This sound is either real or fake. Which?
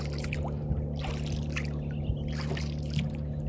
real